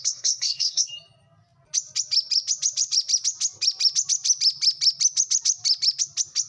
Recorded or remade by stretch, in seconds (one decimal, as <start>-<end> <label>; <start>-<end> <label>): 0.0-0.9 remade; 0.9-6.5 recorded